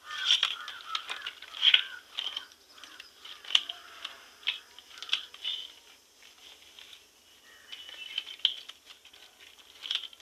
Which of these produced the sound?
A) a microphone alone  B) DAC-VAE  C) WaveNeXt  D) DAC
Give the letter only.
A